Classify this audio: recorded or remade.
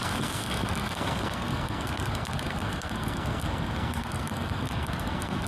remade